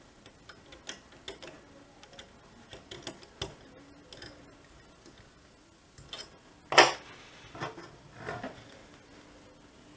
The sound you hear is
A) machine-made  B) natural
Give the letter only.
B